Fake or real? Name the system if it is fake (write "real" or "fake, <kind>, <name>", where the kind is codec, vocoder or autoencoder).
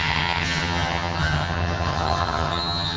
fake, vocoder, HiFi-GAN